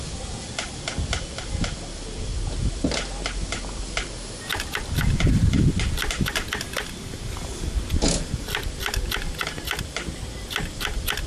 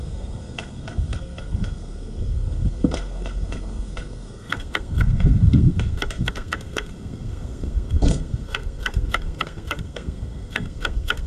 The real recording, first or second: first